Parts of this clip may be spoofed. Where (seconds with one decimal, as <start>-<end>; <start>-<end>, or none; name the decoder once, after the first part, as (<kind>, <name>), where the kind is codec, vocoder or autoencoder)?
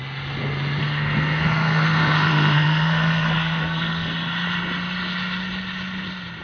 0.8-4.1 (codec, SNAC)